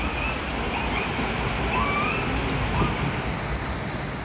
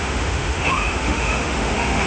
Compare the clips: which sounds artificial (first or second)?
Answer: second